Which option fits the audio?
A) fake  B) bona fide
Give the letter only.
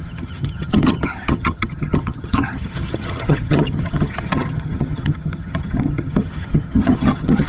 A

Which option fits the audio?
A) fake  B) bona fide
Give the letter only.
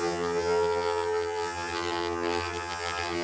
A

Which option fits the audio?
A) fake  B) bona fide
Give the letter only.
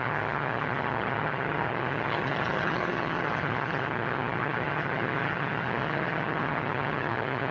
A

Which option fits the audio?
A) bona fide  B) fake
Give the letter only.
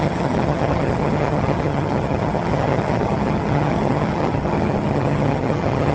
B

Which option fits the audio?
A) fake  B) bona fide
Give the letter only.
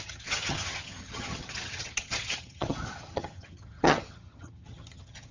A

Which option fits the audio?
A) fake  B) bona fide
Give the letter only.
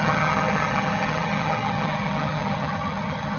A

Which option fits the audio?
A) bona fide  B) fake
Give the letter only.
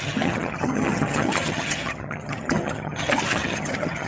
B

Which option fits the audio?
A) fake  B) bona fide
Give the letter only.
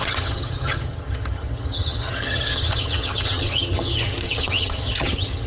A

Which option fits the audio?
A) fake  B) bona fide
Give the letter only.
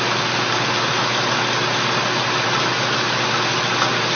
B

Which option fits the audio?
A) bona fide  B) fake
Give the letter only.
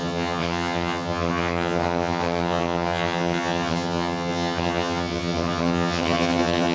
B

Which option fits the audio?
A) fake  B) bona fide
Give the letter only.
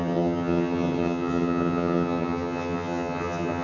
A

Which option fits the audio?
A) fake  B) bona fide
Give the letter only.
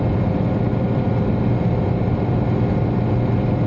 B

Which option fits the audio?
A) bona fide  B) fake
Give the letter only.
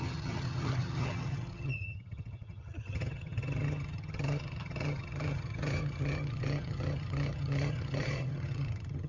B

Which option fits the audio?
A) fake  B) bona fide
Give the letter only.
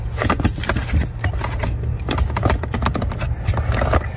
B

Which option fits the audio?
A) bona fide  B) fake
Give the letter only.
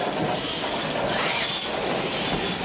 A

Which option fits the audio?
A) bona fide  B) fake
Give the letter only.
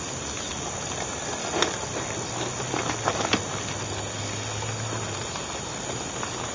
A